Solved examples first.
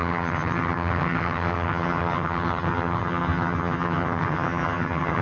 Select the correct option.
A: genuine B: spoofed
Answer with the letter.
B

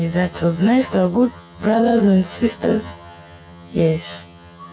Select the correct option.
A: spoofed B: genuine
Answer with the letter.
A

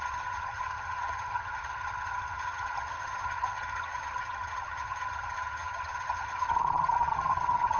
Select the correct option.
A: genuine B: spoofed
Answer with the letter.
B